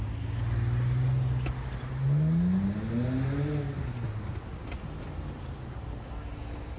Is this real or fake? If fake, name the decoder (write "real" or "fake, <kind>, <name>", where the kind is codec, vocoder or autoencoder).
real